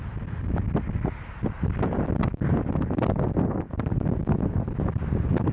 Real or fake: real